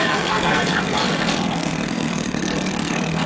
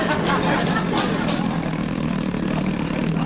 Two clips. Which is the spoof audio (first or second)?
first